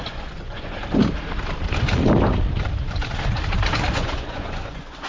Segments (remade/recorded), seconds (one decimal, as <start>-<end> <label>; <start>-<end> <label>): 0.0-0.8 remade; 0.8-3.9 recorded; 3.9-5.1 remade

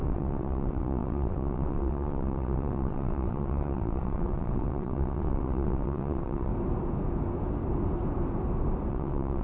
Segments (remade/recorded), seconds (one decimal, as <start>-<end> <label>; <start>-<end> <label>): 0.0-6.5 remade; 6.5-8.9 recorded; 8.9-9.4 remade

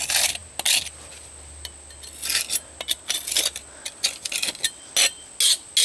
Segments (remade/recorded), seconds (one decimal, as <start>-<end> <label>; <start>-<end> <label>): 0.0-5.8 recorded

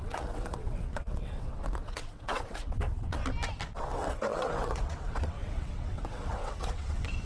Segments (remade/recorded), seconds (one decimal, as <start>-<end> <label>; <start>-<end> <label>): 0.0-3.2 remade; 3.2-3.8 recorded; 3.8-7.3 remade

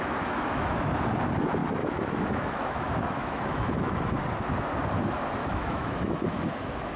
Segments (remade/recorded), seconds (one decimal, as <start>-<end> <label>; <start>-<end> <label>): 0.0-0.9 remade; 0.9-1.6 recorded; 1.6-4.2 remade; 4.2-5.4 recorded; 5.4-7.0 remade

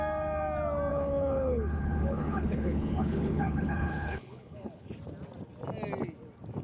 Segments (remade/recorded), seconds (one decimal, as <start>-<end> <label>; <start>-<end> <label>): 0.0-0.9 recorded; 0.9-4.9 remade; 4.9-6.6 recorded

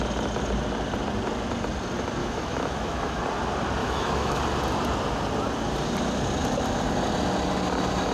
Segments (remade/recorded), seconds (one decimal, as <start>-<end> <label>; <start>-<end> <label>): 0.0-2.2 recorded; 2.2-3.2 remade; 3.2-3.8 recorded; 3.8-4.4 remade; 4.4-8.1 recorded

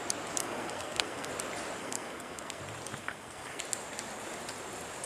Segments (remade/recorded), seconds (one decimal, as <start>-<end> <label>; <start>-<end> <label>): 0.0-0.4 recorded; 0.4-1.3 remade; 1.3-1.8 recorded; 1.8-2.6 remade; 2.6-3.0 recorded; 3.0-3.6 remade; 3.6-5.1 recorded